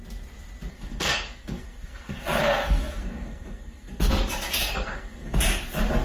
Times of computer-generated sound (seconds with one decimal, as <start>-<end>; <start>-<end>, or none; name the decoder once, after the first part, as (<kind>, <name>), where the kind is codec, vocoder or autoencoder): 0.7-4.1 (codec, SNAC); 4.6-5.4